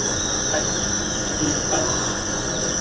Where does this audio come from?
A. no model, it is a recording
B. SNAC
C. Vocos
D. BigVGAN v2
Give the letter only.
C